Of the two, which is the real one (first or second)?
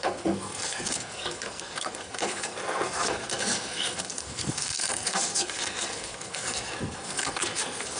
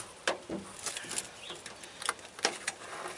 second